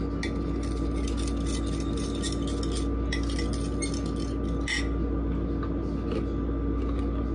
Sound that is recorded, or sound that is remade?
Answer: recorded